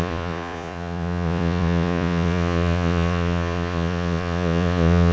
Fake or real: fake